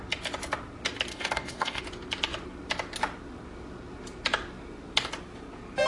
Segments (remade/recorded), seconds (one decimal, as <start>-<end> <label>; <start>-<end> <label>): 0.0-1.1 recorded; 1.1-1.8 remade; 1.8-5.9 recorded